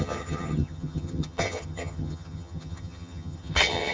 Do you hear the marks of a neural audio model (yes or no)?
yes